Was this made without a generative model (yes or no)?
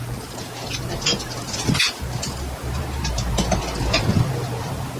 yes